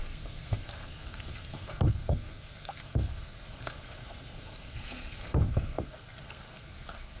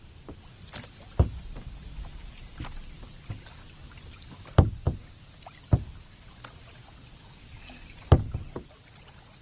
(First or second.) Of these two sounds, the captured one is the second